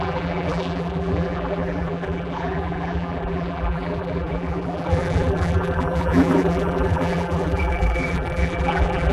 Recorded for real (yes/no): no